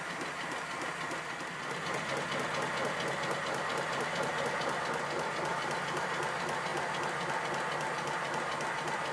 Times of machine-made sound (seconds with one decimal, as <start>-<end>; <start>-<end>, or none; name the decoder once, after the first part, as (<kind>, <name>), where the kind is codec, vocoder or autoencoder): none